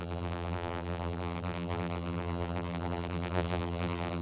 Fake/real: fake